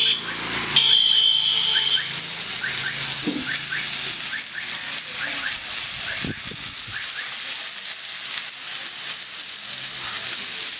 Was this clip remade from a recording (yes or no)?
no